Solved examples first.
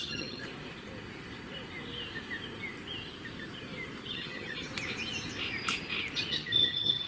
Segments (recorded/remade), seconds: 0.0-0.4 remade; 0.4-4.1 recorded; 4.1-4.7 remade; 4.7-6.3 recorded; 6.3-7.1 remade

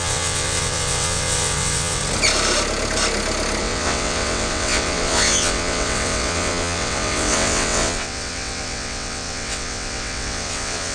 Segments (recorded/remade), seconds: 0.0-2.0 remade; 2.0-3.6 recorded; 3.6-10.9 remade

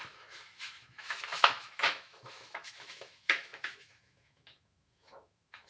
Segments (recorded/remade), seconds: 0.0-5.7 remade

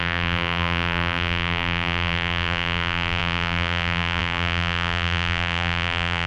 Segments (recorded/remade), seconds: 0.0-6.3 remade